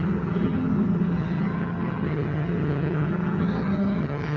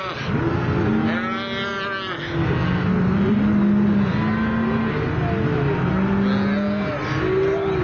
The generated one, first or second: first